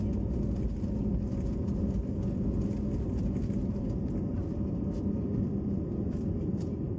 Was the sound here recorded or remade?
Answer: recorded